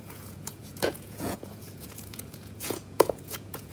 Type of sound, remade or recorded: remade